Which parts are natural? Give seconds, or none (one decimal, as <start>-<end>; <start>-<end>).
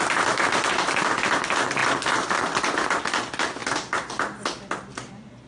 0.0-5.5